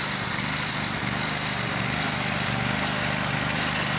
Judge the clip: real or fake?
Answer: real